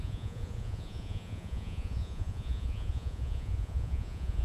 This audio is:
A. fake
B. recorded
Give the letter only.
A